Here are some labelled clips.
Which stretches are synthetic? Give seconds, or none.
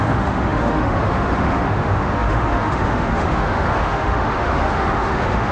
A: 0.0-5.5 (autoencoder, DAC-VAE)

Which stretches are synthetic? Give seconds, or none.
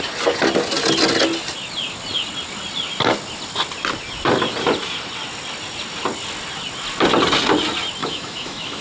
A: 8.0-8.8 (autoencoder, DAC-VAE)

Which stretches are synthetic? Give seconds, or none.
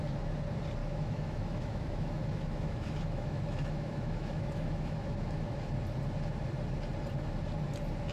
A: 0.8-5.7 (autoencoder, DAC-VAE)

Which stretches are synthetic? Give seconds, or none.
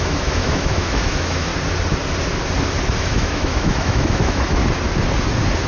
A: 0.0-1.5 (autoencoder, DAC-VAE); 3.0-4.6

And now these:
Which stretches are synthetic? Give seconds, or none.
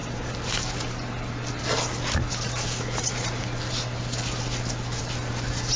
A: none